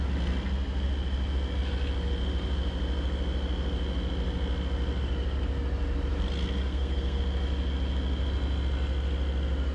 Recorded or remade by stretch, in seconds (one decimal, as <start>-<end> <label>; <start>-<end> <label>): 0.0-6.7 recorded; 6.7-7.2 remade; 7.2-9.7 recorded